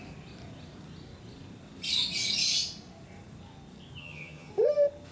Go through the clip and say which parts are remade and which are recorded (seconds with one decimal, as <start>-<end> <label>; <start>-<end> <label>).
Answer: 0.0-4.0 recorded; 4.0-4.5 remade; 4.5-5.1 recorded